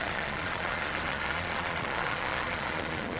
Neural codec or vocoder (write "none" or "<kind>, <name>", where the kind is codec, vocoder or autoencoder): vocoder, Vocos